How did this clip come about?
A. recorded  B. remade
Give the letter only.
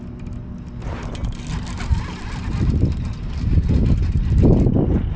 A